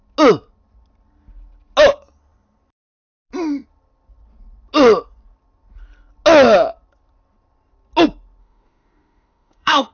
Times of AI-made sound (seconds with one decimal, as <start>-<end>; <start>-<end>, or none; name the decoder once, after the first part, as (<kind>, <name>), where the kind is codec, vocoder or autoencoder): 8.4-9.9 (autoencoder, DAC-VAE)